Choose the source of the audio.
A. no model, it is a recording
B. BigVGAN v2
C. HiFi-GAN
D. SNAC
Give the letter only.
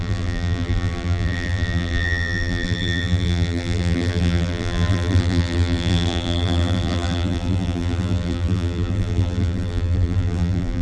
B